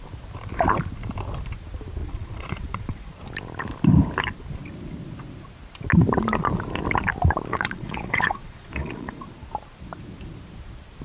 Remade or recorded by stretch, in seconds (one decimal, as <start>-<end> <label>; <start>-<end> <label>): 0.0-2.0 recorded; 2.0-3.1 remade; 3.1-7.5 recorded; 7.5-9.3 remade; 9.3-11.0 recorded